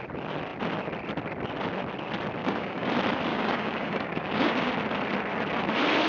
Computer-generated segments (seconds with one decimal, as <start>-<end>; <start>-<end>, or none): 2.4-2.9; 3.3-4.7

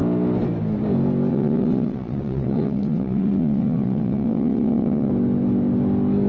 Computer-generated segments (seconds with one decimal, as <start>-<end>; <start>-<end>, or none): 1.3-5.1

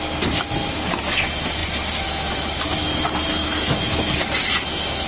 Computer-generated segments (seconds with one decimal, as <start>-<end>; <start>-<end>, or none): 3.4-4.2

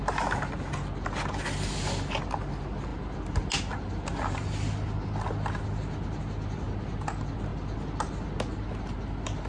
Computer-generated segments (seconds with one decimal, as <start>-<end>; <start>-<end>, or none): none

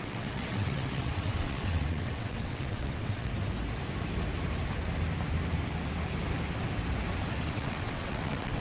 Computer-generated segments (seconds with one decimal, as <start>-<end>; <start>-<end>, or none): 0.0-3.3; 7.4-8.6